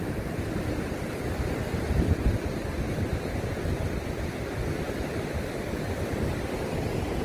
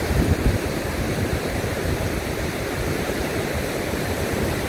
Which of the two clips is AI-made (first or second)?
second